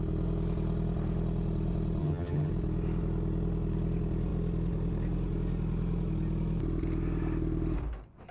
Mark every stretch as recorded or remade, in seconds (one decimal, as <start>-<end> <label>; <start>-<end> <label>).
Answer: 0.0-2.0 recorded; 2.0-2.5 remade; 2.5-8.3 recorded